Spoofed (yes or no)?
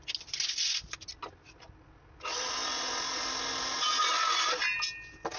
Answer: no